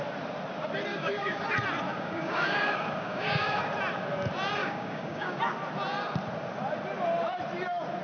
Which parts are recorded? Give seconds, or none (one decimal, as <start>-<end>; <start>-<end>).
0.0-0.9; 1.4-1.9; 3.6-4.6; 5.4-8.0